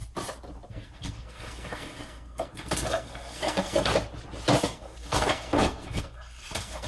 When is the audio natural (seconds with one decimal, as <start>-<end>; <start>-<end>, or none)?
0.0-0.7; 3.9-4.6